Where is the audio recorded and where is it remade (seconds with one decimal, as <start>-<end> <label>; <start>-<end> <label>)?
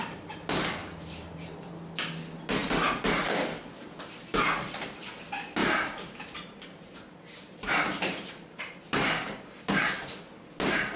0.0-0.8 recorded; 0.8-1.7 remade; 1.7-5.6 recorded; 5.6-10.2 remade; 10.2-11.0 recorded